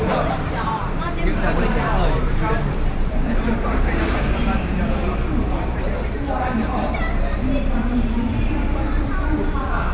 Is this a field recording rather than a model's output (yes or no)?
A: no